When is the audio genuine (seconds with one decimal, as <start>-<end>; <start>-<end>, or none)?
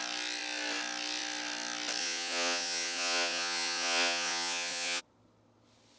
0.0-2.0; 5.0-6.0